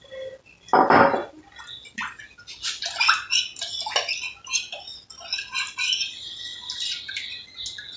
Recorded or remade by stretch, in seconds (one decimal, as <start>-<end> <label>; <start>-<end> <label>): 0.0-8.0 recorded